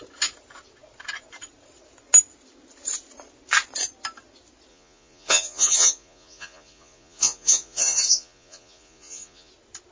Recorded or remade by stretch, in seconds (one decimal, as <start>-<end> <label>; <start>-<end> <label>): 0.0-4.7 recorded; 4.7-9.5 remade; 9.5-9.9 recorded